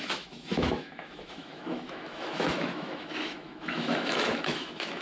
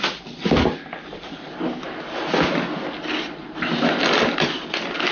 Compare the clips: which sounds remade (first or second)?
first